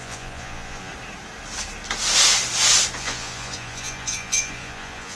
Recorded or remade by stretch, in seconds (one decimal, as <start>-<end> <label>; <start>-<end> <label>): 0.0-0.9 remade; 0.9-3.0 recorded; 3.0-5.1 remade